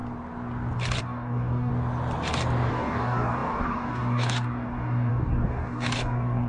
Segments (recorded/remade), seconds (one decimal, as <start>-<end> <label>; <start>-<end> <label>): 0.0-1.0 recorded; 1.0-1.7 remade; 1.7-2.7 recorded; 2.7-6.5 remade